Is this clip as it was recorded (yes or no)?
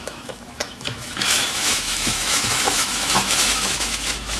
no